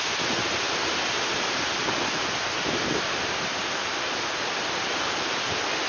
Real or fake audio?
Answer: real